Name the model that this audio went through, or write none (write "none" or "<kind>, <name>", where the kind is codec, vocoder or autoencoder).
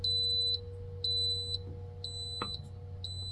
none